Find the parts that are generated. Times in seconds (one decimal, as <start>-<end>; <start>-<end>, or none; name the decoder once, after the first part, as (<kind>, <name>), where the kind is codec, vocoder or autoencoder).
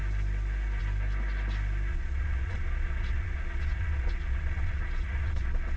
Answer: 1.9-5.8 (vocoder, Vocos)